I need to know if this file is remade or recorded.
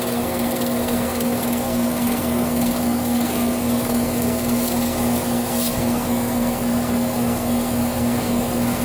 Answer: remade